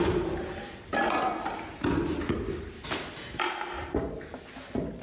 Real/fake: real